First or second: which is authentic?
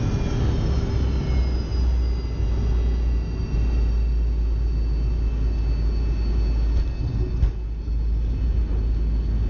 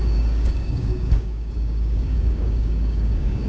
first